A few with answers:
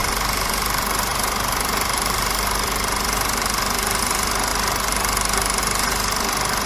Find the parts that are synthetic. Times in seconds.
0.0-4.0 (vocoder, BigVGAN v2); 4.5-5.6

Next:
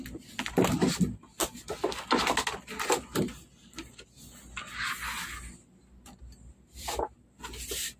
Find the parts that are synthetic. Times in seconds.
none

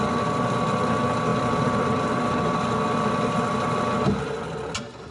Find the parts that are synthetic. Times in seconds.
1.3-2.2 (vocoder, BigVGAN v2)